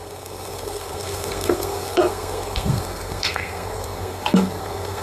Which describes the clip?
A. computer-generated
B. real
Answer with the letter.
A